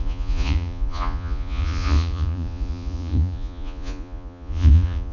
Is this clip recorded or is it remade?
remade